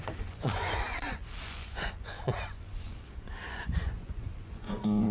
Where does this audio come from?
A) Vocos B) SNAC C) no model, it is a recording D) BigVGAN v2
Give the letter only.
A